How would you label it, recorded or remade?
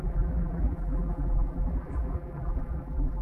remade